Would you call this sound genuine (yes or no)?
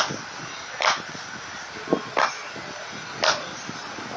yes